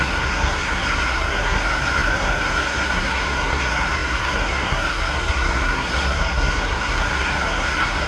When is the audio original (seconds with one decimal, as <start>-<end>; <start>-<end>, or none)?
none